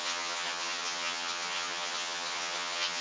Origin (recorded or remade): remade